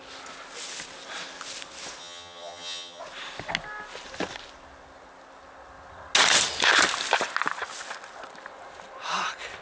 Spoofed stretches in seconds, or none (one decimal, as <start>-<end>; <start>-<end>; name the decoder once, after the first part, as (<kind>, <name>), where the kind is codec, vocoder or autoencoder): 2.0-3.0 (vocoder, HiFi-GAN)

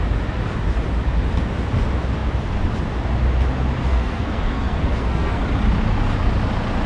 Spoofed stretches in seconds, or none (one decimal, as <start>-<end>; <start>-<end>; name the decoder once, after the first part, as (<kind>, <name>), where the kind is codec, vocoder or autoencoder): 3.9-5.4 (codec, SNAC)

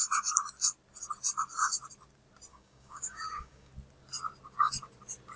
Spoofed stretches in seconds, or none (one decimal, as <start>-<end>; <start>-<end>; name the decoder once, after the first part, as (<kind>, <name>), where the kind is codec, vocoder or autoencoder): 2.5-3.7 (codec, DAC)